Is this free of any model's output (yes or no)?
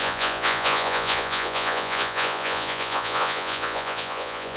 no